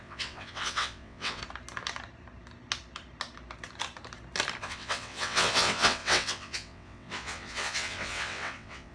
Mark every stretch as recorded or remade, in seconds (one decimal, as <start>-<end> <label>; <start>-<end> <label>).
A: 0.0-1.4 remade; 1.4-4.6 recorded; 4.6-8.9 remade